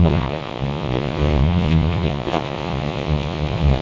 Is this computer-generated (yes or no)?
yes